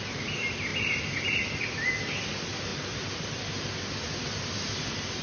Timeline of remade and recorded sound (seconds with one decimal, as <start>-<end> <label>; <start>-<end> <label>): 0.0-5.2 recorded